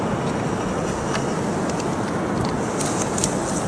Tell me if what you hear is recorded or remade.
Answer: recorded